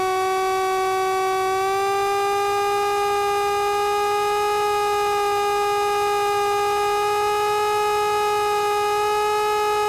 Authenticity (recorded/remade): recorded